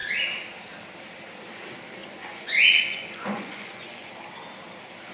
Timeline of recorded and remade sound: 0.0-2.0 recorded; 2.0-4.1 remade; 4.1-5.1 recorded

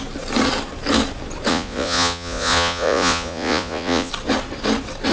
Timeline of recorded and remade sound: 0.0-1.5 recorded; 1.5-4.1 remade; 4.1-5.1 recorded

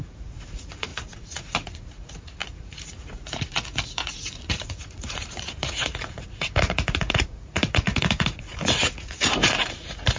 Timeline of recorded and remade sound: 0.0-10.2 remade

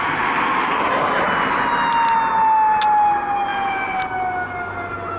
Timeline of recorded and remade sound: 0.0-3.5 recorded; 3.5-4.0 remade; 4.0-5.2 recorded

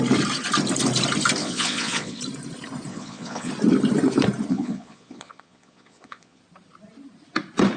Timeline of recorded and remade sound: 0.0-1.4 recorded; 1.4-2.2 remade; 2.2-2.9 recorded; 2.9-3.5 remade; 3.5-4.5 recorded; 4.5-6.4 remade; 6.4-7.8 recorded

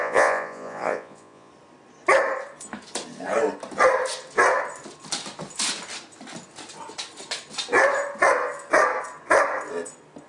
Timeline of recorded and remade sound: 0.0-1.5 remade; 1.5-10.3 recorded